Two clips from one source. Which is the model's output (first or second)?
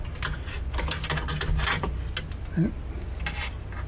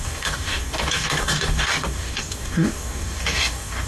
second